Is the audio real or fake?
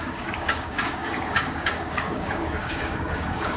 fake